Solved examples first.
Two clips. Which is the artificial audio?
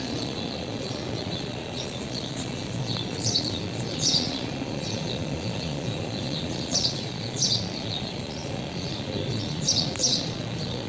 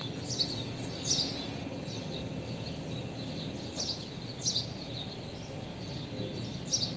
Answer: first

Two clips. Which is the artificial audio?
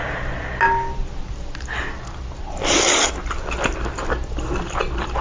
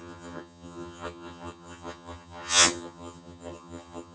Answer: second